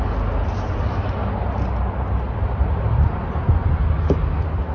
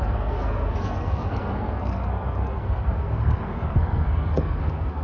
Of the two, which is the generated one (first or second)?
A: second